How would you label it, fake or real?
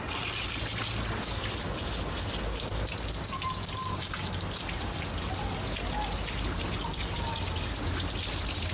real